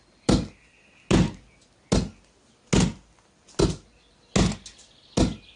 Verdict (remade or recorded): recorded